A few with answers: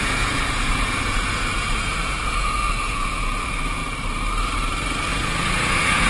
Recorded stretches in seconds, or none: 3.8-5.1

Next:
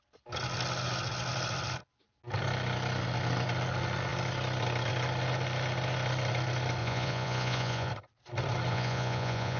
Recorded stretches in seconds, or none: 0.0-6.8; 7.9-8.7

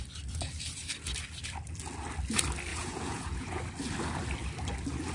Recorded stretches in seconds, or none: 0.0-2.7; 3.6-5.1